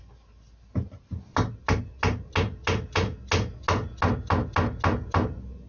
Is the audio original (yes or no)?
yes